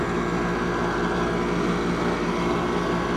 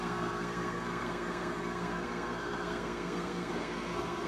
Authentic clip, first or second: first